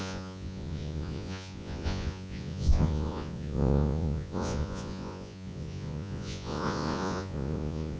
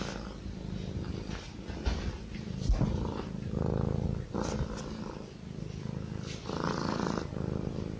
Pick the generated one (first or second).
first